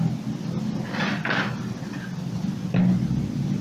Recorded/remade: recorded